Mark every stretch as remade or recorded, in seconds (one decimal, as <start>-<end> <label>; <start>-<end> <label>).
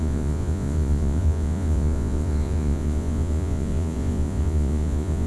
0.0-5.3 remade